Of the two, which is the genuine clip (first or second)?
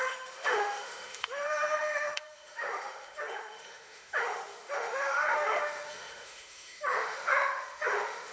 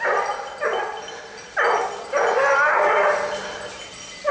second